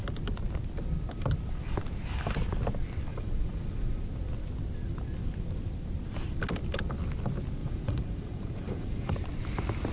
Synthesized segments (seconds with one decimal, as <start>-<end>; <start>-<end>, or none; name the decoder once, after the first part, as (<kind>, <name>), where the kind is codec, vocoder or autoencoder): 3.1-4.0 (vocoder, Vocos); 7.6-9.1